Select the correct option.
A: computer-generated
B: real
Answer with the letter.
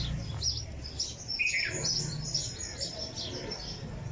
B